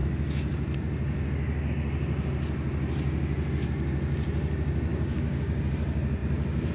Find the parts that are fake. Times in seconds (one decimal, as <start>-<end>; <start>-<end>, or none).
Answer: 4.9-5.6